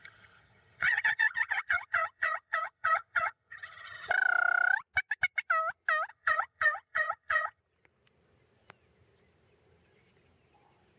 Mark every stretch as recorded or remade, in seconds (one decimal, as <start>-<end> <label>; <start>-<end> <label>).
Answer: 0.0-4.1 remade; 4.1-6.1 recorded; 6.1-7.6 remade; 7.6-11.0 recorded